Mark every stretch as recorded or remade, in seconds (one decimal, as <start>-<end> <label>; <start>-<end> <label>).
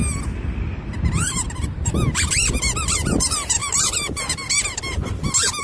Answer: 0.0-5.6 recorded